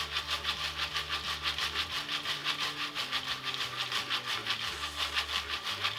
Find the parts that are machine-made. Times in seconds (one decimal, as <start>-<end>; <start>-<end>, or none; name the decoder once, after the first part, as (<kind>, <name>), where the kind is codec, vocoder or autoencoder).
none

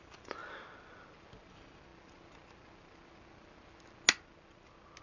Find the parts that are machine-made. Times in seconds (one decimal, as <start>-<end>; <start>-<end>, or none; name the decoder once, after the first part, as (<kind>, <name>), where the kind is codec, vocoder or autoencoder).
0.0-0.4 (vocoder, BigVGAN v2); 1.5-1.9

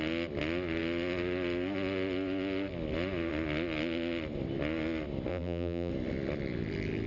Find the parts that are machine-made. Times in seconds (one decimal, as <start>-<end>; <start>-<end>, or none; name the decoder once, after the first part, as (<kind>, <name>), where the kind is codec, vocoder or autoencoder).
5.3-5.9 (vocoder, BigVGAN v2)